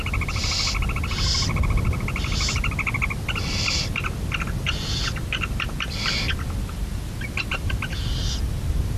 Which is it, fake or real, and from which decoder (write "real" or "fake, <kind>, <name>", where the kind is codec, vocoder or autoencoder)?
real